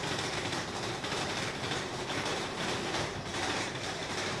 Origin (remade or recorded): remade